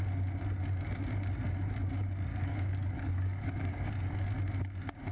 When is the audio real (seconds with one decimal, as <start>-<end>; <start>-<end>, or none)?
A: 0.0-2.3; 3.9-5.1

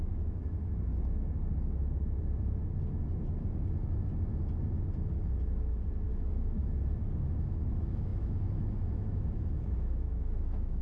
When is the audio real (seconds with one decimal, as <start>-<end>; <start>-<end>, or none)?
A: 0.9-6.1; 6.6-7.4

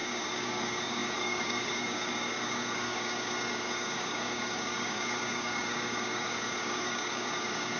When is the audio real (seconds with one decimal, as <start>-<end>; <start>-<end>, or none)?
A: none

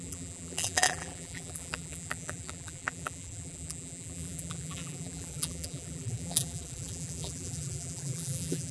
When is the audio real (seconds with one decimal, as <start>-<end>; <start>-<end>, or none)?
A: none